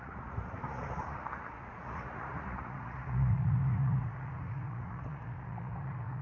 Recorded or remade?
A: remade